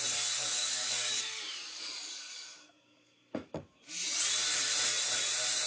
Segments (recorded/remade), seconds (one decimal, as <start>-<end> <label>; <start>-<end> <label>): 0.0-0.4 recorded; 0.4-3.8 remade; 3.8-5.7 recorded